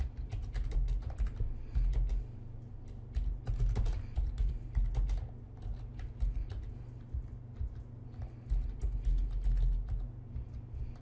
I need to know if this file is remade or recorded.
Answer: recorded